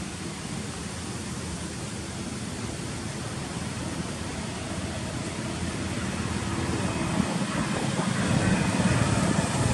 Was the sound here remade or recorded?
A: recorded